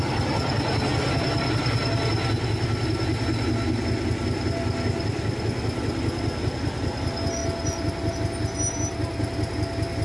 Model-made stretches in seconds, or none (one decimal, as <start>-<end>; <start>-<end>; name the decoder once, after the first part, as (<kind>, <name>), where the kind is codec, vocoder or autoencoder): none